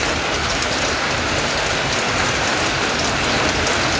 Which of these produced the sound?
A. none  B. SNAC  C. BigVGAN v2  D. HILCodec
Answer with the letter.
A